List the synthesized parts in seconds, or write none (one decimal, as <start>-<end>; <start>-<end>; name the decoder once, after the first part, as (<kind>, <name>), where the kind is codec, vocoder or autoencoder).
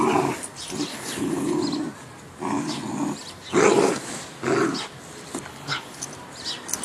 0.9-1.6 (codec, HILCodec); 5.5-6.0